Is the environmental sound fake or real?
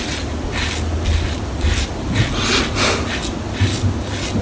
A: real